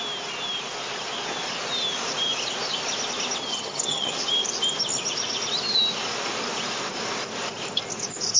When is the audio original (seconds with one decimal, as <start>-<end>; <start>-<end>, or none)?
0.0-3.5; 4.1-8.4